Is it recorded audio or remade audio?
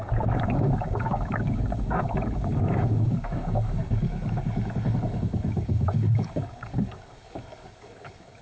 remade